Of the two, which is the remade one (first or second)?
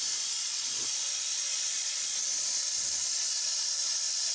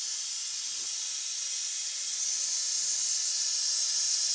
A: first